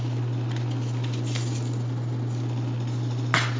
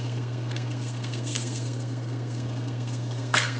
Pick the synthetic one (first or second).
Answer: second